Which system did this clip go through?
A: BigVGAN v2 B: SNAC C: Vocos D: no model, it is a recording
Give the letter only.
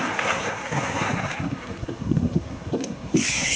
B